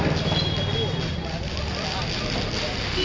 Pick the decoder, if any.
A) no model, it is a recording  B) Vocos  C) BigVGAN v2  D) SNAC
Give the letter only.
A